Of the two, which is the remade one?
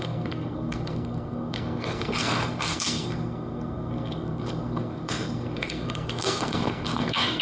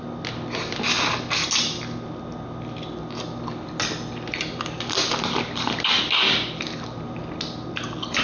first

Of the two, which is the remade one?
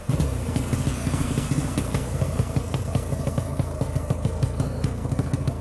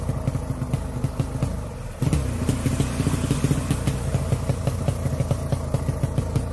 first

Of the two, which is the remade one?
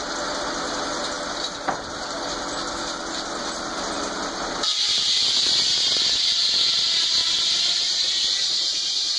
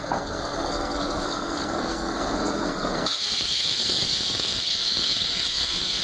second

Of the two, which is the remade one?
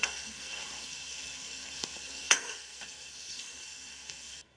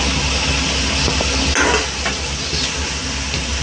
first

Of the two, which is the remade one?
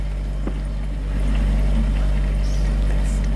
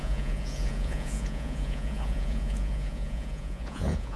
second